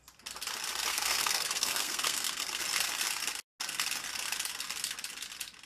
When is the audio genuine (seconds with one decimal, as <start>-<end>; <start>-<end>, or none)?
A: 0.0-0.9; 2.6-5.7